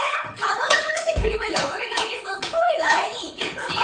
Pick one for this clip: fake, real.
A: fake